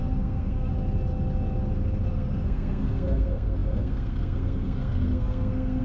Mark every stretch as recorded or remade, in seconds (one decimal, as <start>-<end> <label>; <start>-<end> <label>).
0.0-0.7 remade; 0.7-2.1 recorded; 2.1-5.8 remade